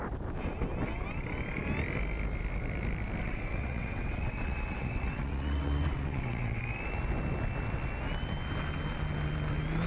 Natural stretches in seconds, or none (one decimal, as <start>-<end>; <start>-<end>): 0.0-3.2; 6.6-9.9